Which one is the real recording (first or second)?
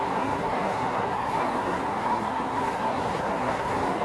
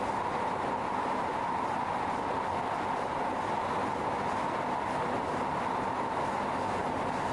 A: second